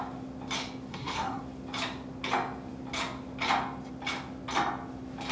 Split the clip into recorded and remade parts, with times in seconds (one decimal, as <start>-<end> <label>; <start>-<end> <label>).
0.0-0.9 recorded; 0.9-1.4 remade; 1.4-5.3 recorded